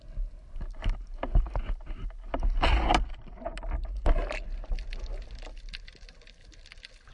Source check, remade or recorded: recorded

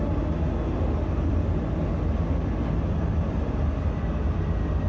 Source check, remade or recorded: recorded